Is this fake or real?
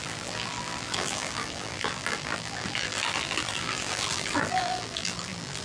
fake